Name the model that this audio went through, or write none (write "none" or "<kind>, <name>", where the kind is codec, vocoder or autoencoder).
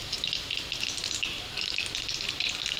none